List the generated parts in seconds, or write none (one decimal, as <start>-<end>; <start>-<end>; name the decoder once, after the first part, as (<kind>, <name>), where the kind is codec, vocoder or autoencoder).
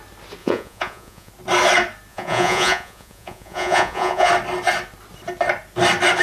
0.4-1.3 (vocoder, Vocos); 2.1-4.3